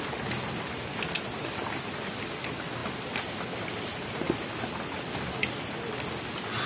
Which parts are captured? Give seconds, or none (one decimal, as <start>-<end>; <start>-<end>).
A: 0.0-6.7